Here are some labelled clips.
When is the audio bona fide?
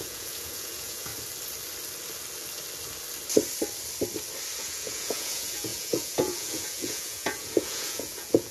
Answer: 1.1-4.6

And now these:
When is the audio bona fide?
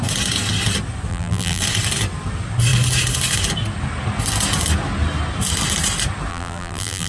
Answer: 0.0-1.1; 1.6-6.3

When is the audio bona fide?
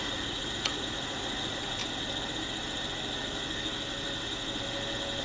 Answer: 1.8-5.2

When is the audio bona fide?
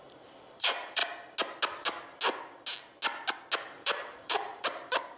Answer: 1.0-3.6